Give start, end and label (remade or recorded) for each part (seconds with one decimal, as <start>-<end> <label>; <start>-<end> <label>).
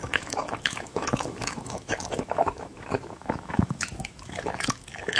0.0-5.2 remade